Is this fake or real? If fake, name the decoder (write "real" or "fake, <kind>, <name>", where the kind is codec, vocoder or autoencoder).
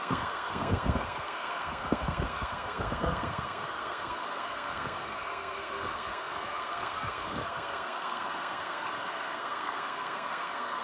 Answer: fake, codec, SNAC